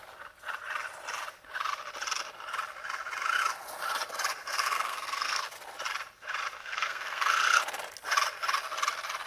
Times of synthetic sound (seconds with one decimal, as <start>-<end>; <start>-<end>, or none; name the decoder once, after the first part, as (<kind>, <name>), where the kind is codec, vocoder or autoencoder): 4.4-5.4 (codec, SNAC); 6.6-7.6